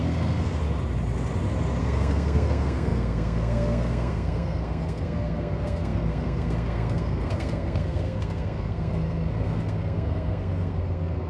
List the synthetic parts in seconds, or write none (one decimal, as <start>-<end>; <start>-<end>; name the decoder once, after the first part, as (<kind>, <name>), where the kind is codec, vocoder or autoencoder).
0.0-0.6 (codec, SNAC); 1.8-11.3